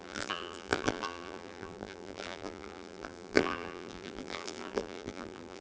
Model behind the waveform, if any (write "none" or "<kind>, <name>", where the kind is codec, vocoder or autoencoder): vocoder, BigVGAN v2